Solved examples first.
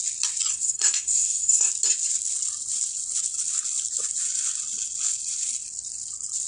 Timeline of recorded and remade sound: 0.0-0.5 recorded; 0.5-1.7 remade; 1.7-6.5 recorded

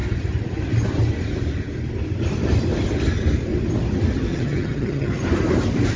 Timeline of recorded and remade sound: 0.0-4.3 recorded; 4.3-5.2 remade; 5.2-6.0 recorded

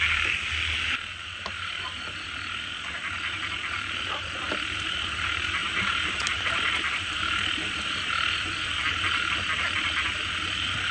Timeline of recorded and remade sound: 0.0-5.6 recorded; 5.6-6.3 remade; 6.3-10.9 recorded

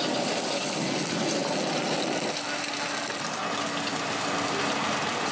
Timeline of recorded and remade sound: 0.0-5.3 recorded

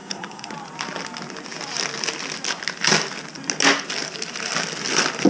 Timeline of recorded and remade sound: 0.0-0.5 remade; 0.5-5.3 recorded

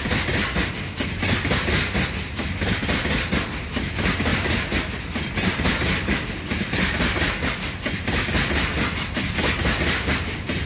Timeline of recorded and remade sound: 0.0-10.7 recorded